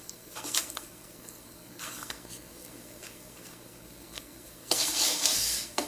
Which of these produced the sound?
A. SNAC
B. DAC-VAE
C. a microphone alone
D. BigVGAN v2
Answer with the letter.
A